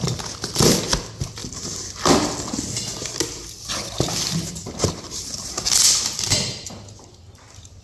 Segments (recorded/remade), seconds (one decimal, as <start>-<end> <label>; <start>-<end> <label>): 0.0-7.8 recorded